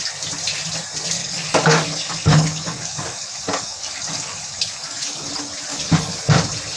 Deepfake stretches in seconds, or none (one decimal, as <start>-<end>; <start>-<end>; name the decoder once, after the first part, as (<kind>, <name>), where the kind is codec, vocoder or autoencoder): 1.2-5.3 (codec, DAC); 5.7-6.2